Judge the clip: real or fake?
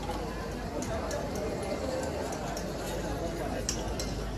real